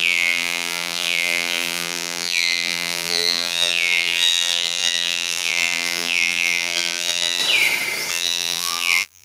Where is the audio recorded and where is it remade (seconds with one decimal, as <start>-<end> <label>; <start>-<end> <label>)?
0.0-7.4 remade; 7.4-8.1 recorded; 8.1-9.2 remade